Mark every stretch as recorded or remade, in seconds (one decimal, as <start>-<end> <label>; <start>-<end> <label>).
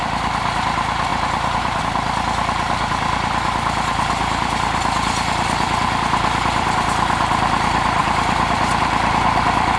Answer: 0.0-1.1 recorded; 1.1-1.8 remade; 1.8-8.0 recorded; 8.0-8.7 remade; 8.7-9.8 recorded